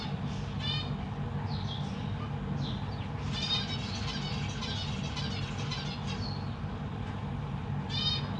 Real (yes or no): yes